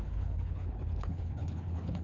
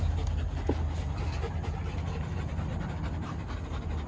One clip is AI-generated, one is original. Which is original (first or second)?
second